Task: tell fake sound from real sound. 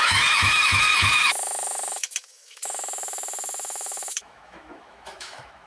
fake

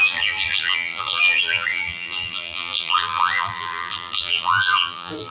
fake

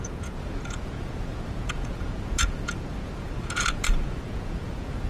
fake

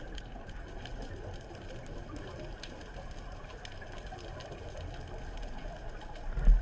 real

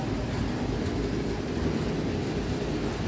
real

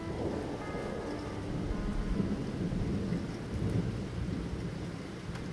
real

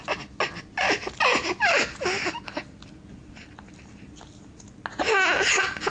real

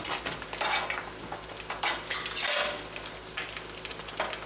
real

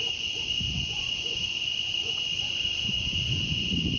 fake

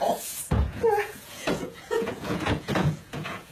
fake